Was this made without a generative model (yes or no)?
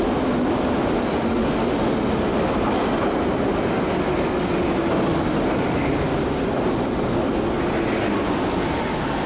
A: yes